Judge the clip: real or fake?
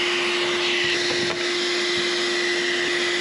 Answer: real